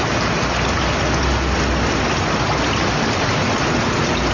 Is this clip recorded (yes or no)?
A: yes